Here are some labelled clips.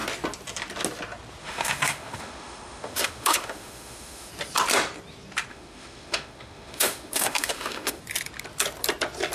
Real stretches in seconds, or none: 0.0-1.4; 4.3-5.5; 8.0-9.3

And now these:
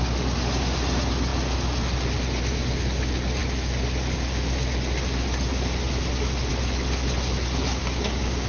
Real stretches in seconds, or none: 0.0-7.8

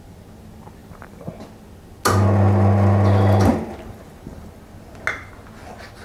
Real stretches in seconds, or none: 0.0-0.8; 1.3-3.5; 4.6-6.0